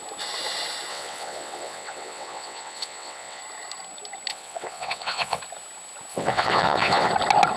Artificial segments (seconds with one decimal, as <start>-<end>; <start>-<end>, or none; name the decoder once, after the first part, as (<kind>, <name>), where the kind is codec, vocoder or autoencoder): 0.9-3.4 (vocoder, WaveNeXt); 4.3-5.4; 6.1-7.1